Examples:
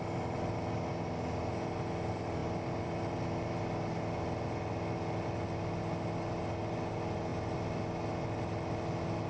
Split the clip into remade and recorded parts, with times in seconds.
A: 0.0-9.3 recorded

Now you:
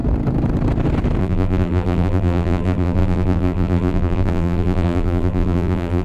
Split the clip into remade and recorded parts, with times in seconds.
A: 0.0-1.2 recorded; 1.2-6.0 remade

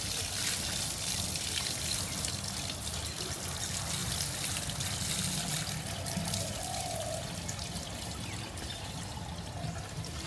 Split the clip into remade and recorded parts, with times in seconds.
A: 0.0-10.3 recorded

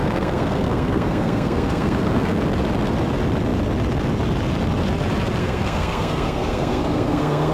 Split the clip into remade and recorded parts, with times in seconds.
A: 0.0-2.4 remade; 2.4-5.4 recorded; 5.4-7.5 remade

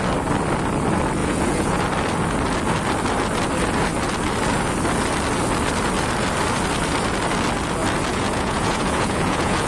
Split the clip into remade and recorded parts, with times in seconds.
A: 0.0-1.2 recorded; 1.2-1.8 remade; 1.8-8.1 recorded; 8.1-9.7 remade

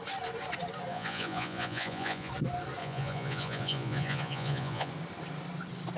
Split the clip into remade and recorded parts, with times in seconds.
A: 0.0-0.9 recorded; 0.9-2.3 remade; 2.3-2.8 recorded; 2.8-4.9 remade; 4.9-6.0 recorded

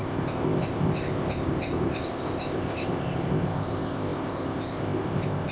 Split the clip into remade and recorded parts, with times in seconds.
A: 0.0-5.5 remade

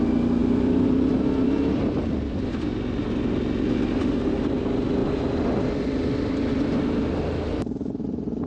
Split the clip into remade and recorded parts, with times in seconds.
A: 0.0-0.4 recorded; 0.4-2.5 remade; 2.5-5.0 recorded; 5.0-6.7 remade; 6.7-8.5 recorded